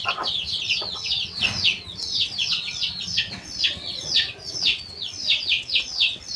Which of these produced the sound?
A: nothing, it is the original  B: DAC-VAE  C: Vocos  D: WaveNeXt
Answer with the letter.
D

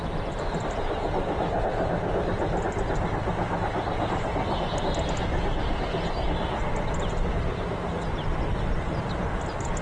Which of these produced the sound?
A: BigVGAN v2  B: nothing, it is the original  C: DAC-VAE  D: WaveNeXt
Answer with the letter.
B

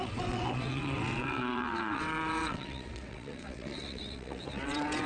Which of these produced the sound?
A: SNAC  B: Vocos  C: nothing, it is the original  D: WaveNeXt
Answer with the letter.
D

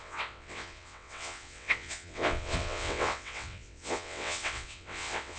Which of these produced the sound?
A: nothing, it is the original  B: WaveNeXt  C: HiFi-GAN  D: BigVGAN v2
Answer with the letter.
B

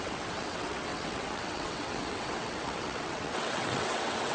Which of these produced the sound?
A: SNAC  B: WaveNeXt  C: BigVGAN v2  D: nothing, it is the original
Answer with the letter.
B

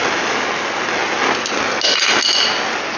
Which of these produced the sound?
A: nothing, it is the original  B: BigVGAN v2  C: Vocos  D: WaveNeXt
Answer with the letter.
A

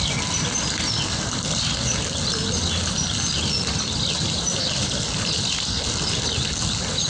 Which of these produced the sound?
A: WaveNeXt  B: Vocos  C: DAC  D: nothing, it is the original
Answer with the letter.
D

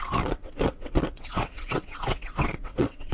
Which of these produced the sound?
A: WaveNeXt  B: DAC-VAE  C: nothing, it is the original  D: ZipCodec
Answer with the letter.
A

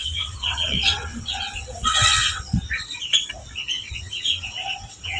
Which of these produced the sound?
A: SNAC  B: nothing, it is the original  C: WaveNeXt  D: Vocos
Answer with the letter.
C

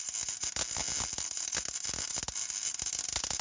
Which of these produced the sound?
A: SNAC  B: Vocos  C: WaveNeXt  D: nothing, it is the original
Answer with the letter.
D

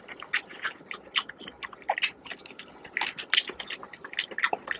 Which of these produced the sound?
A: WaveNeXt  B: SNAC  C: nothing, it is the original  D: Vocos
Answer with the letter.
C